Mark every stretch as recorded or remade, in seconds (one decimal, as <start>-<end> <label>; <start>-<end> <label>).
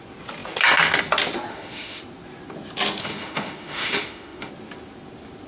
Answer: 0.0-1.5 recorded; 1.5-2.0 remade; 2.0-3.0 recorded; 3.0-4.5 remade; 4.5-5.5 recorded